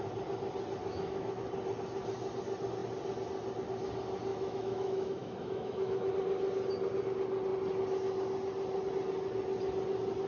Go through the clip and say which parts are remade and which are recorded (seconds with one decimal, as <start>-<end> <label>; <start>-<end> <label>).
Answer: 0.0-0.8 recorded; 0.8-1.4 remade; 1.4-4.3 recorded; 4.3-6.1 remade; 6.1-10.3 recorded